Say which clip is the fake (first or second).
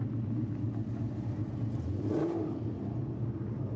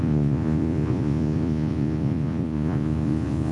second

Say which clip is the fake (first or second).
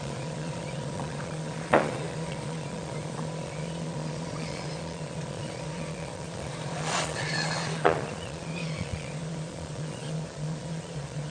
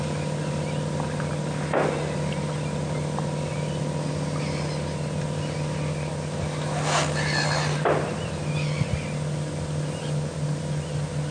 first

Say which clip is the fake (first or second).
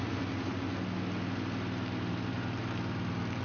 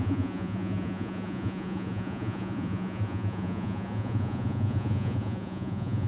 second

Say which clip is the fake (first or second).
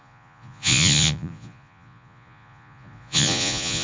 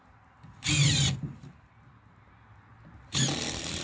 first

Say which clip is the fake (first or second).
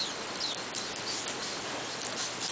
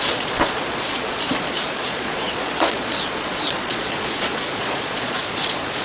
second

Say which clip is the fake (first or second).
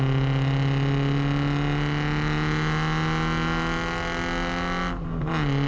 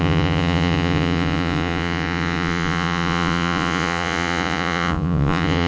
second